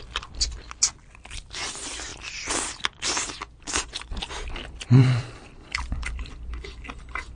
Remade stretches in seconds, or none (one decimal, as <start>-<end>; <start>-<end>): 2.1-6.3